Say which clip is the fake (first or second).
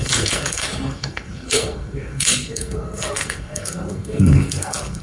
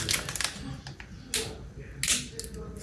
first